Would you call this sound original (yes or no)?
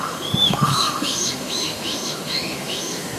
no